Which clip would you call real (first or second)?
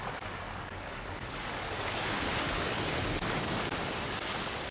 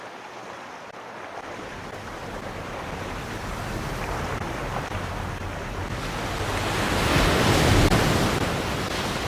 second